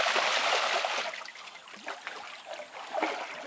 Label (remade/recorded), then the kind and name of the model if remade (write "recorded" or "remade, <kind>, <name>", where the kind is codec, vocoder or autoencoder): recorded